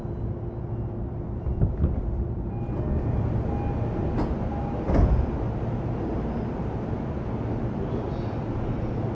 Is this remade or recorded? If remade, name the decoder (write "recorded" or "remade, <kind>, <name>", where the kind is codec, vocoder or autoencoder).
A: recorded